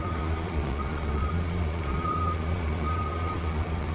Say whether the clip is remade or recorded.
remade